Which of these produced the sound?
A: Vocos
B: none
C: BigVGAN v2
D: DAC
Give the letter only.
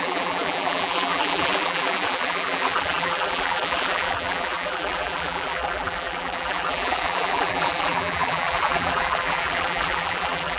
C